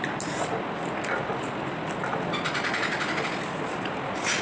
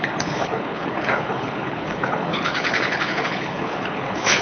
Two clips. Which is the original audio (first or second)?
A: first